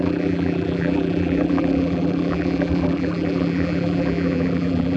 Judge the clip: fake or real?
fake